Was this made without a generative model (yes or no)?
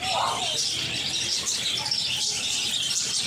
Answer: yes